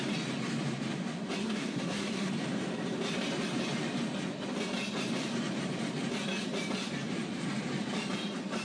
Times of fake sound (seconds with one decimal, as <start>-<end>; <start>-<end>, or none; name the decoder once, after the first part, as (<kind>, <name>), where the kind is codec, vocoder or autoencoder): 1.4-2.3 (codec, SNAC)

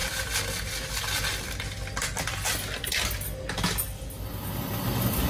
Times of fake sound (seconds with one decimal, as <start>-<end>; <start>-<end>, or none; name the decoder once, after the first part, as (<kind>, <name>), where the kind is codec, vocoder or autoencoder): none

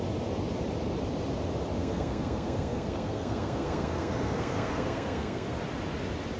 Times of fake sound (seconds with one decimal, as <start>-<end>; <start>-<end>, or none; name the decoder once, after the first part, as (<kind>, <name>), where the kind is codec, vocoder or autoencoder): 1.8-5.6 (codec, SNAC)

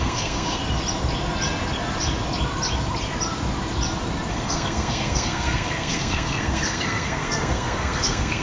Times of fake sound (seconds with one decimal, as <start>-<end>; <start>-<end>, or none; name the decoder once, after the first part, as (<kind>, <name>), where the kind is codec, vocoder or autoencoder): 0.0-0.6 (codec, SNAC); 4.3-8.4

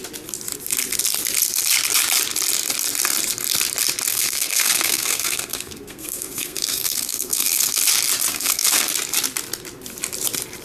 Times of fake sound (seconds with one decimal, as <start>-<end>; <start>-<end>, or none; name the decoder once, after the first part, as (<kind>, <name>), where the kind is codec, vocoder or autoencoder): 4.1-7.8 (codec, SNAC); 8.3-8.9